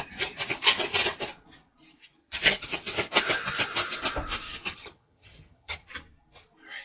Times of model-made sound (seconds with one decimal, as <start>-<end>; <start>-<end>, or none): 2.2-2.8; 4.7-5.9